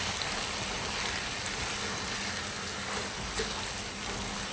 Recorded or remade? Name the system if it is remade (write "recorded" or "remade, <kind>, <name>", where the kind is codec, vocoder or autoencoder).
recorded